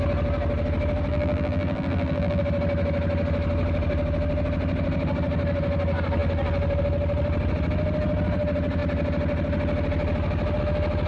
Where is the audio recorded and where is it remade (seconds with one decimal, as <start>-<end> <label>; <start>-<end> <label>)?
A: 0.0-1.1 recorded; 1.1-2.4 remade; 2.4-11.1 recorded